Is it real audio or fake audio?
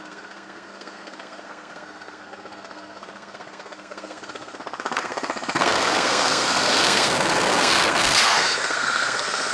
fake